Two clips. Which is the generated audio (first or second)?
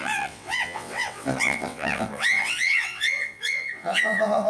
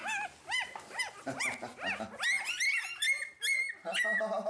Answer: first